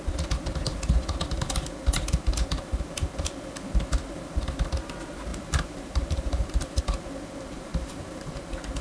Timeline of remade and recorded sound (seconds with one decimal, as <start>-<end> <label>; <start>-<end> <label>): 0.0-5.3 recorded; 5.3-6.8 remade; 6.8-7.7 recorded; 7.7-8.4 remade; 8.4-8.8 recorded